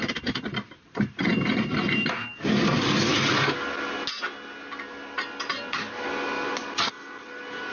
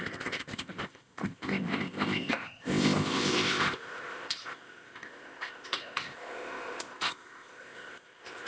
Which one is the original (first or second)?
first